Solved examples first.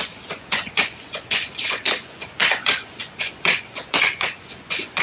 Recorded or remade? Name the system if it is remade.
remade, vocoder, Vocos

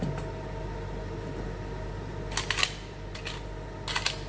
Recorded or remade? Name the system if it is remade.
recorded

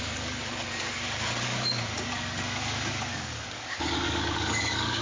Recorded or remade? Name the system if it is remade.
remade, codec, DAC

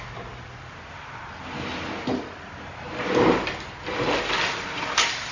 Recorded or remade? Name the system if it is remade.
recorded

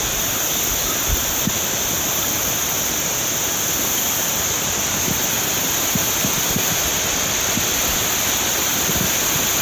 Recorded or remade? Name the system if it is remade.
recorded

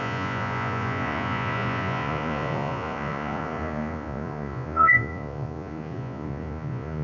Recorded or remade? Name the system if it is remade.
remade, vocoder, Vocos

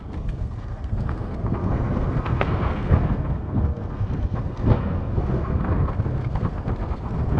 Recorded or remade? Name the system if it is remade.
remade, codec, SNAC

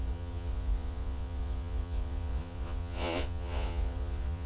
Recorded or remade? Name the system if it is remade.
remade, vocoder, Vocos